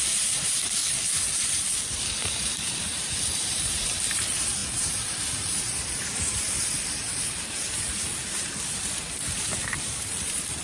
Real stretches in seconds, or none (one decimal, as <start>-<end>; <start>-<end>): 0.8-1.9